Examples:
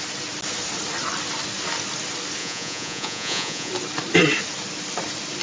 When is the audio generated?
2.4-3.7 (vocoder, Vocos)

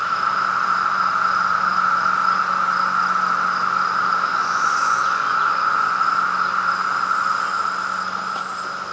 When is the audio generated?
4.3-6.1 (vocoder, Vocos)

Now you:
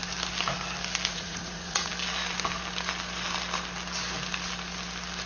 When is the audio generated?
1.1-1.9 (vocoder, Vocos)